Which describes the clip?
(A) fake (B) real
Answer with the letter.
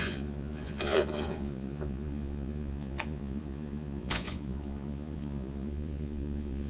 A